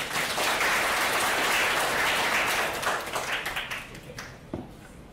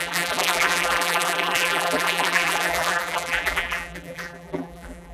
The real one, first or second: first